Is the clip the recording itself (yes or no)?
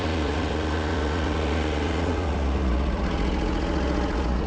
no